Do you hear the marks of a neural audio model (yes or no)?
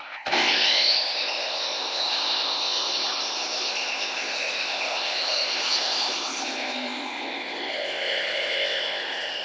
yes